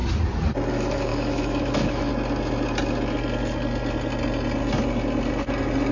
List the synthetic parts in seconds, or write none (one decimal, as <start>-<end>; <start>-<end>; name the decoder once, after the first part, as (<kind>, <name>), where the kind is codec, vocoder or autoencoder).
0.7-2.1 (autoencoder, DAC-VAE)